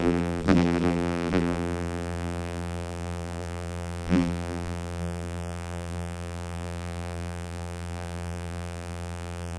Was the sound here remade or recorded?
remade